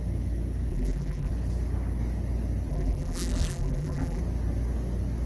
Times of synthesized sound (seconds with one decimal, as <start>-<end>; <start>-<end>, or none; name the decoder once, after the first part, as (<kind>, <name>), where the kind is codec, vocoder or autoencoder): 0.7-1.3 (vocoder, BigVGAN v2); 2.7-4.2